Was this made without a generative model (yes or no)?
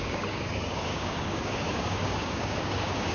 no